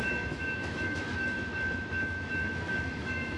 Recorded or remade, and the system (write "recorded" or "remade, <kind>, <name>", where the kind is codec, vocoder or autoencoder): remade, autoencoder, DAC-VAE